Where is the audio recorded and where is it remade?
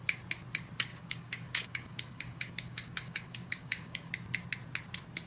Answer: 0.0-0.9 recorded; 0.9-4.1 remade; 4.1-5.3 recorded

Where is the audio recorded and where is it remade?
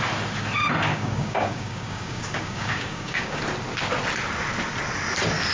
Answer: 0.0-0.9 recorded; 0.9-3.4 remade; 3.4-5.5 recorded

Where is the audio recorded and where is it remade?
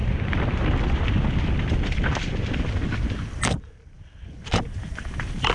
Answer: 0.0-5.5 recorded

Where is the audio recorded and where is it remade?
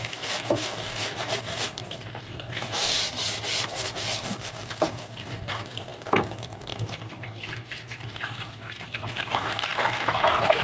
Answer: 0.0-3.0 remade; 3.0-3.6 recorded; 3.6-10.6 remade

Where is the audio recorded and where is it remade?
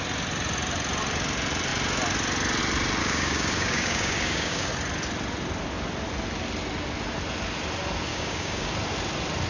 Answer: 0.0-3.0 recorded; 3.0-4.7 remade; 4.7-8.1 recorded; 8.1-8.7 remade; 8.7-9.5 recorded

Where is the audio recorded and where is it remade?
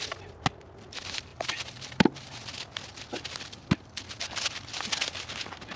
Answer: 0.0-5.8 recorded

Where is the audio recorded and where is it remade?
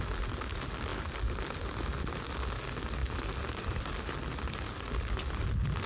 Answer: 0.0-5.9 recorded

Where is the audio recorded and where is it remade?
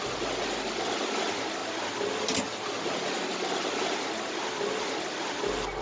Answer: 0.0-5.8 recorded